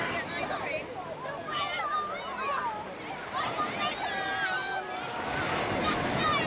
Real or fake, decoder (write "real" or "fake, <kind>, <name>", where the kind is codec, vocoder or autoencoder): real